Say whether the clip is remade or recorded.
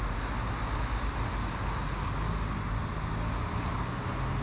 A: recorded